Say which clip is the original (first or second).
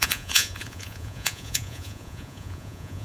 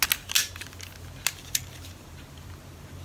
second